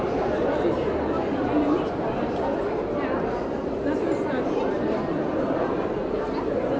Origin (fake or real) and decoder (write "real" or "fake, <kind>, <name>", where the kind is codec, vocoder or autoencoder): real